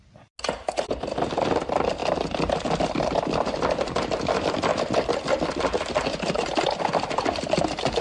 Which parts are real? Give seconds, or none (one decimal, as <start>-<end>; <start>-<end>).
0.0-2.0; 6.8-8.0